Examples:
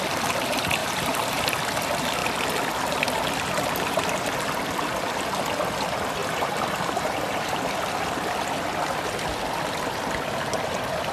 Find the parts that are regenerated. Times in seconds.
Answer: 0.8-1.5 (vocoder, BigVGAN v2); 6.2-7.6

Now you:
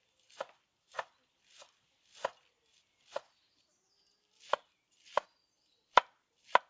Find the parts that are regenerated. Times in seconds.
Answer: none

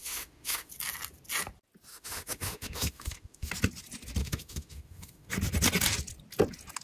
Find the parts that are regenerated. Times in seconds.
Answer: 0.0-0.7 (autoencoder, DAC-VAE); 1.9-3.5; 4.2-5.3

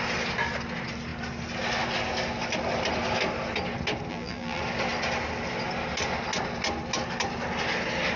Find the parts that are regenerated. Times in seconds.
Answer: 4.1-4.6 (vocoder, BigVGAN v2)

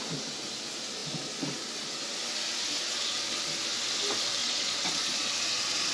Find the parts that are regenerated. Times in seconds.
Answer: 4.4-5.3 (vocoder, Vocos)

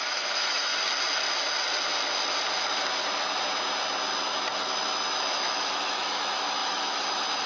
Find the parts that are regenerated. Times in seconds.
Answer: 0.0-0.7 (autoencoder, DAC-VAE); 5.2-7.5